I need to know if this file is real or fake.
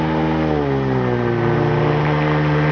real